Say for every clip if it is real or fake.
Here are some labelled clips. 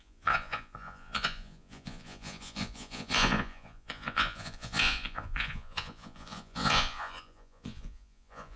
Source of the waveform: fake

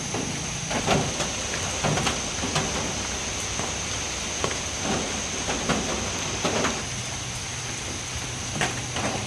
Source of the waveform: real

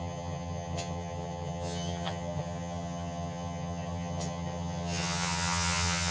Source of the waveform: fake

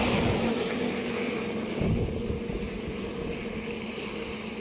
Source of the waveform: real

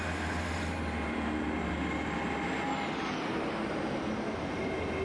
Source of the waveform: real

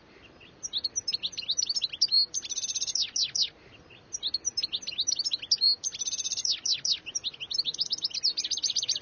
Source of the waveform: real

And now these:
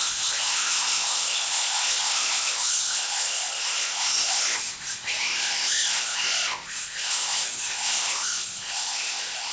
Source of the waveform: fake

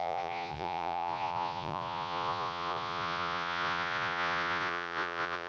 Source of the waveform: fake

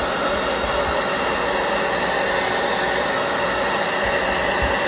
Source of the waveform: real